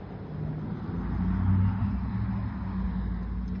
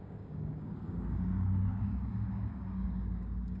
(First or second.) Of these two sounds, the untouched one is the first